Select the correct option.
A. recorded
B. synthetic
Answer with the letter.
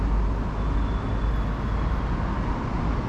A